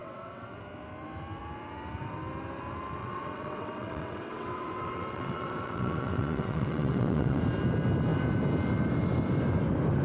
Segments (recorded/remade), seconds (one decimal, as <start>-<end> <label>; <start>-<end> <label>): 0.0-0.6 remade; 0.6-3.0 recorded; 3.0-7.4 remade; 7.4-10.0 recorded

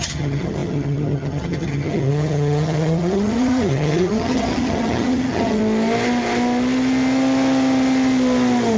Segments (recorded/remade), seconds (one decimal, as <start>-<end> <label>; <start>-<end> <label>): 0.0-5.6 remade; 5.6-8.8 recorded

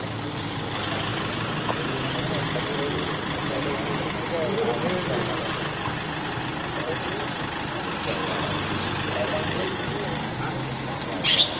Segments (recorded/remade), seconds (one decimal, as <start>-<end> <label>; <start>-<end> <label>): 0.0-11.6 recorded

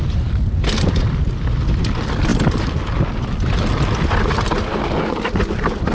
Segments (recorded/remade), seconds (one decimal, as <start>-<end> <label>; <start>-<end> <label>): 0.0-5.9 recorded

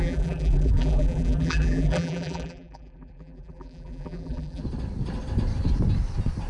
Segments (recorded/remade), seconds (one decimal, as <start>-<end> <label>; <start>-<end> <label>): 0.0-4.6 remade; 4.6-6.5 recorded